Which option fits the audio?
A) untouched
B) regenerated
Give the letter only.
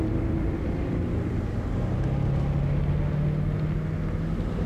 A